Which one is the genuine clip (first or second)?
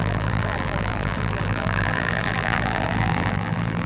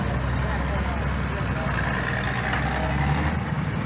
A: second